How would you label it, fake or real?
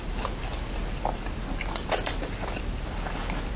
real